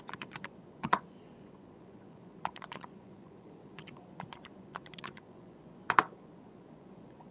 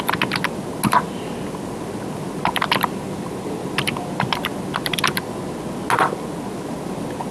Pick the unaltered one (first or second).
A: second